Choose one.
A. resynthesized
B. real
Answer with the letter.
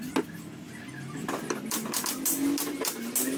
B